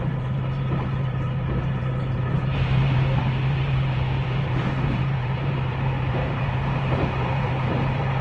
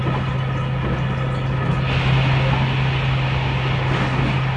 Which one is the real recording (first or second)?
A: second